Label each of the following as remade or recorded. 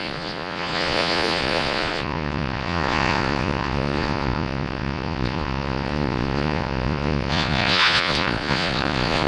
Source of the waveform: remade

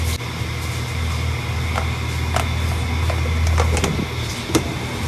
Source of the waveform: recorded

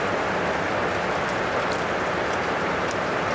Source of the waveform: recorded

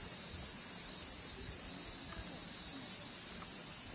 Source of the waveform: recorded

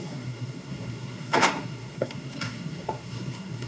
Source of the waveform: remade